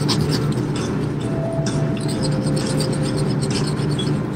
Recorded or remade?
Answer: recorded